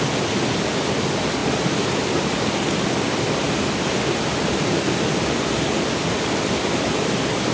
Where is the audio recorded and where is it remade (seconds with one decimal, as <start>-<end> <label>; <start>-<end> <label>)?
0.0-7.5 recorded